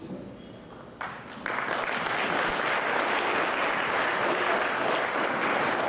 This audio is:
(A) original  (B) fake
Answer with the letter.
A